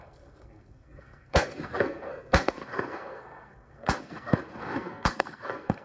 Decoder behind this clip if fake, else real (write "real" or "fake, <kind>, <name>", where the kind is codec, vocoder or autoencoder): fake, codec, SNAC